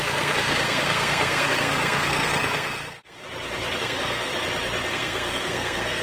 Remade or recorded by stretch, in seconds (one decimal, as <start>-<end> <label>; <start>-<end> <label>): 0.0-3.2 remade; 3.2-3.8 recorded; 3.8-4.3 remade; 4.3-4.9 recorded; 4.9-6.0 remade